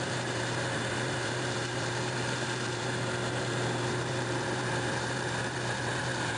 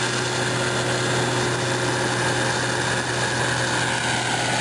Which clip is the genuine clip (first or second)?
second